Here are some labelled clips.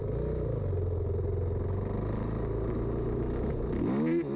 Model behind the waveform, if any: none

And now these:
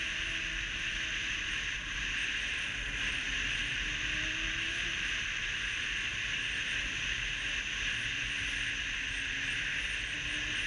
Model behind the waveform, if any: none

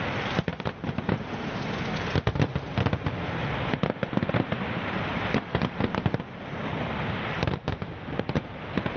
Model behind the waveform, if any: none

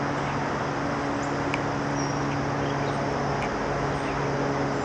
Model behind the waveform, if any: none